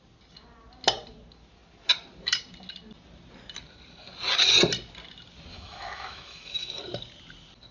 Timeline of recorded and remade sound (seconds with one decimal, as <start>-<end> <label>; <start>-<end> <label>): 0.0-5.5 recorded; 5.5-6.7 remade; 6.7-7.7 recorded